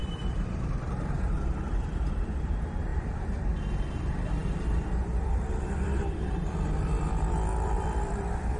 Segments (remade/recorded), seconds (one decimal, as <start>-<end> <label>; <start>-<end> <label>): 0.0-8.6 remade